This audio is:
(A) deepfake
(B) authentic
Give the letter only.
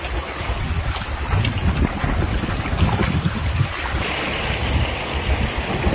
B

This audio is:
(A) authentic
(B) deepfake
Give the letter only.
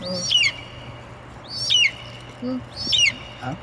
A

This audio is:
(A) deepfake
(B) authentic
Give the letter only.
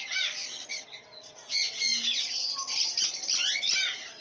B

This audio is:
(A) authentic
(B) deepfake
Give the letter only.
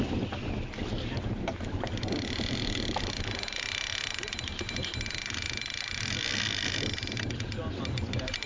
A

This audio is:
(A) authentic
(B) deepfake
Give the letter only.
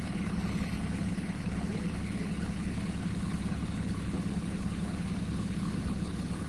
B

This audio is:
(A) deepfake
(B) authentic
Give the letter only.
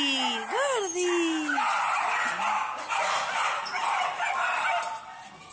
B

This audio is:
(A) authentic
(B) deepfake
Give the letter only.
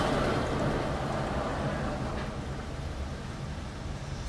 A